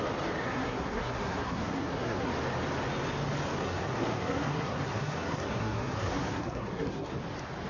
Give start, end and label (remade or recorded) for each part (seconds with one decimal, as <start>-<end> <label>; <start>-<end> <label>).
0.0-0.4 recorded; 0.4-2.3 remade; 2.3-3.6 recorded; 3.6-7.1 remade; 7.1-7.7 recorded